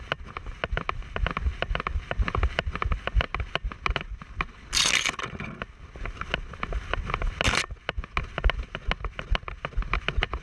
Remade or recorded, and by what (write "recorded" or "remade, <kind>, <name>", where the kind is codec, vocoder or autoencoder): recorded